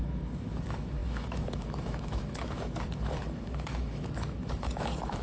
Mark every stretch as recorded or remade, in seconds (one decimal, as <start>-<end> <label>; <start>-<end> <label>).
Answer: 0.0-5.2 remade